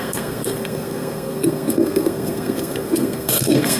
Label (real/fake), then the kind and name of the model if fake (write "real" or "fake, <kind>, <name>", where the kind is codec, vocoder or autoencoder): fake, codec, SNAC